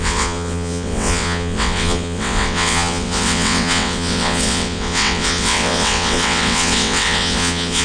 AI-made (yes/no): yes